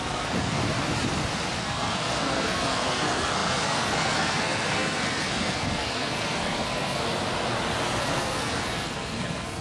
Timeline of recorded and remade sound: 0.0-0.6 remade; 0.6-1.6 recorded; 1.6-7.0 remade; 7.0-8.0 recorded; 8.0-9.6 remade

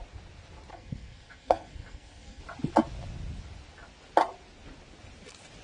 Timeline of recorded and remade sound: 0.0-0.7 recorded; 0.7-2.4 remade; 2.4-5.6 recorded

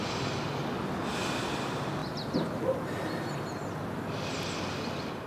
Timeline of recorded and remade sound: 0.0-5.3 recorded

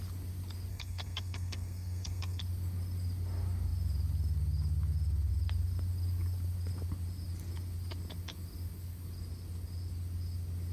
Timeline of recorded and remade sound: 0.0-0.7 recorded; 0.7-2.4 remade; 2.4-10.7 recorded